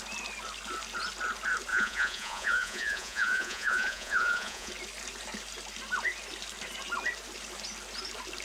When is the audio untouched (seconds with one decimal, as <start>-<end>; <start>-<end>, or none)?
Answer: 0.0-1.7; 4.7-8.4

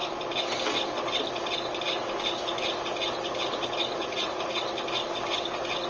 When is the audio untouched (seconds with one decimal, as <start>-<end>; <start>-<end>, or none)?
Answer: 0.0-4.0; 4.6-5.9

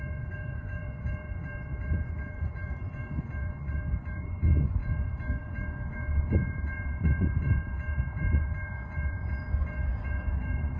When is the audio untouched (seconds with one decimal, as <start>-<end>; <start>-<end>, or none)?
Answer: none

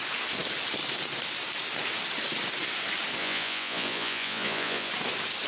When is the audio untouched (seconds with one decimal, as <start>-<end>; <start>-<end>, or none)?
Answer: 0.0-3.2; 4.9-5.5

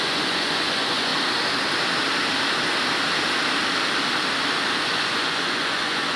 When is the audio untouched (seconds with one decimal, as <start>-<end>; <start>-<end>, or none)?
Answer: 1.1-4.8